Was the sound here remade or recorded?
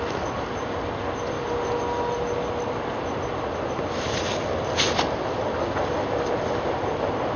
recorded